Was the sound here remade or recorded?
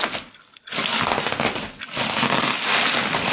recorded